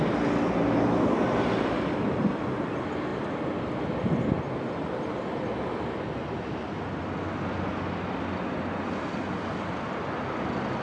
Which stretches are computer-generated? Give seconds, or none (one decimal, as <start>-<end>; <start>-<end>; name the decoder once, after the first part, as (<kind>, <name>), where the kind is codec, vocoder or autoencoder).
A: none